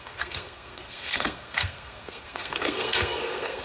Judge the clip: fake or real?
fake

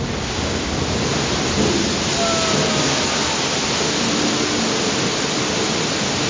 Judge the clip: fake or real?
real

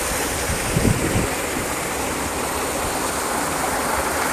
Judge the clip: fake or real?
real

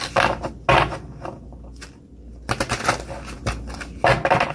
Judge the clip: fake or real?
real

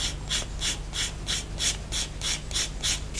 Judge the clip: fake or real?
real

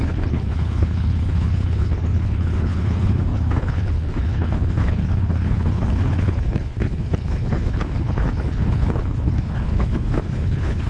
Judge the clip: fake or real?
fake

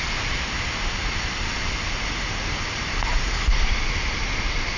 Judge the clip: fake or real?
real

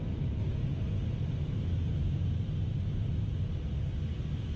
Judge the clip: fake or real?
real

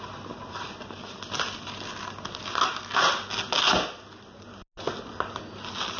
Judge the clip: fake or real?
real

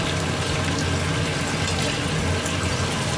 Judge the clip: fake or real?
real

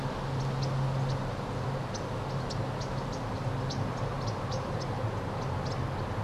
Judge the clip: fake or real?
real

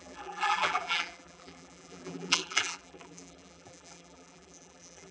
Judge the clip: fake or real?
fake